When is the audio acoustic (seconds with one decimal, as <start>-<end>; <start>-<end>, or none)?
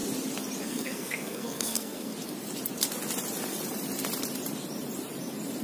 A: 0.0-0.6; 2.1-5.6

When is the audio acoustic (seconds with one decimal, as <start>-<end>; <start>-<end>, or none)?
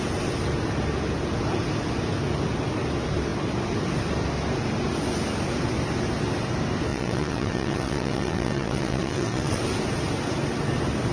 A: 0.0-6.9; 9.6-11.1